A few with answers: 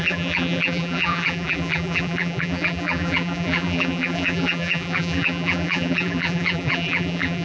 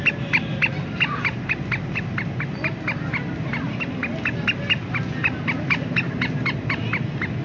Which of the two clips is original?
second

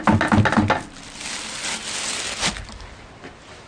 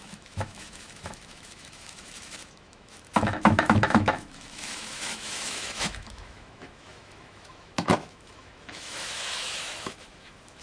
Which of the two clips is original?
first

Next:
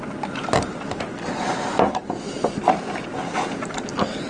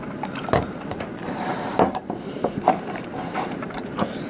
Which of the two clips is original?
first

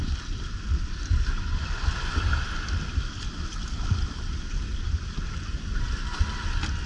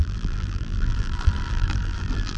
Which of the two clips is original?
first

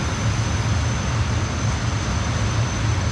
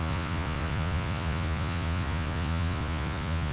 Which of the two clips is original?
first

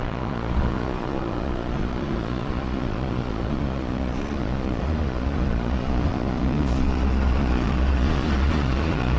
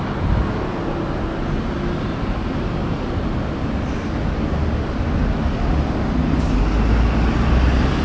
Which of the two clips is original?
second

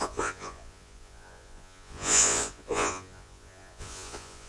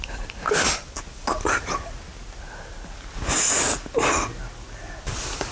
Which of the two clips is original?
second